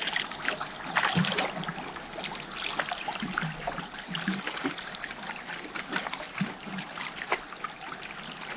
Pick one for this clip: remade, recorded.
recorded